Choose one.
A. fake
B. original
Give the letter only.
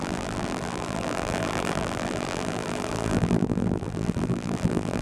A